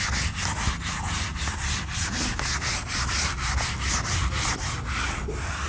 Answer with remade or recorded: recorded